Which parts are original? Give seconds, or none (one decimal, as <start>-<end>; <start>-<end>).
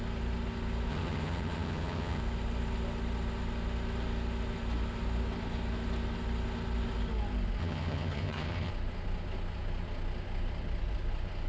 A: 0.0-0.9; 2.2-7.6; 8.7-11.5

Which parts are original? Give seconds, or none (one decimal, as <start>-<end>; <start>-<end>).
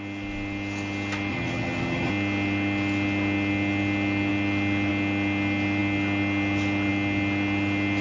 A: 0.0-1.3; 2.1-8.0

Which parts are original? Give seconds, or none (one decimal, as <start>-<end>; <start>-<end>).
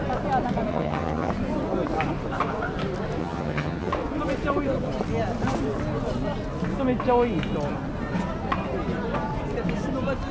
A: 0.0-0.7; 1.3-3.2; 3.9-10.3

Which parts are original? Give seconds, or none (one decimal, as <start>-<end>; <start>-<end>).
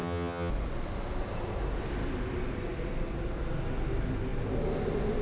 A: 0.5-5.2